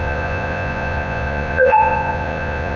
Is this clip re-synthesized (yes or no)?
yes